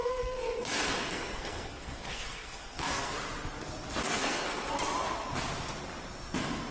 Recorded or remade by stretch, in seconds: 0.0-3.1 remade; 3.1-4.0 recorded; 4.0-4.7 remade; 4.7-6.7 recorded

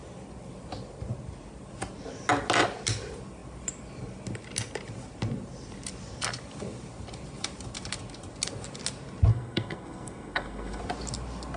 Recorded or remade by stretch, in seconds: 0.0-9.3 recorded; 9.3-10.8 remade; 10.8-11.6 recorded

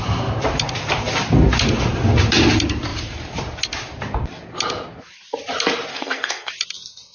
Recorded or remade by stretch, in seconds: 0.0-5.9 recorded; 5.9-6.5 remade; 6.5-7.1 recorded

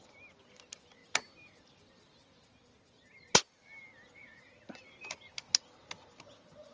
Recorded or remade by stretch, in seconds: 0.0-6.7 recorded

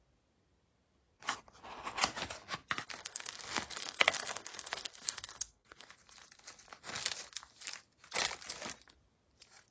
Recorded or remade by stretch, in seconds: 0.0-3.0 recorded; 3.0-5.9 remade; 5.9-9.7 recorded

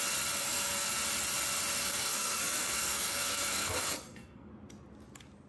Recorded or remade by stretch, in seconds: 0.0-0.4 recorded; 0.4-0.9 remade; 0.9-1.8 recorded; 1.8-4.5 remade; 4.5-5.5 recorded